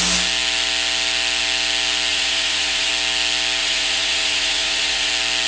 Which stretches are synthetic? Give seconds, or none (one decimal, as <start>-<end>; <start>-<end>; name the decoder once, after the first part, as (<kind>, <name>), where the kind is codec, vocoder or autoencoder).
2.1-2.9 (vocoder, Vocos); 3.6-5.1